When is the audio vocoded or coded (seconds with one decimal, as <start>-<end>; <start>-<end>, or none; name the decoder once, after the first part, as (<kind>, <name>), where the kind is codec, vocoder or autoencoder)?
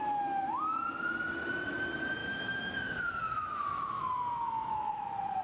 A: 2.2-5.4 (autoencoder, DAC-VAE)